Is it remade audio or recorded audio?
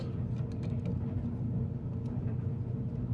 recorded